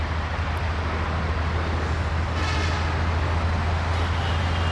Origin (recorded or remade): recorded